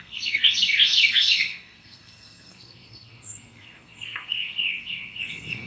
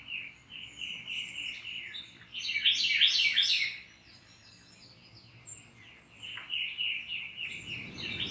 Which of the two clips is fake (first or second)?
first